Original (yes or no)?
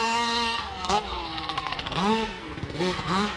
no